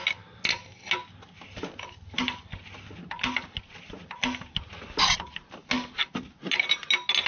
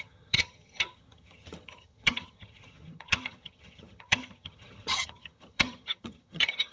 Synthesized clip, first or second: second